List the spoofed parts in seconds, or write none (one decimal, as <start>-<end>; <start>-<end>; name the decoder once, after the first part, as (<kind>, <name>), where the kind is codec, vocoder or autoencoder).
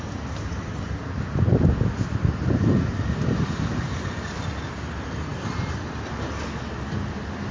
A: none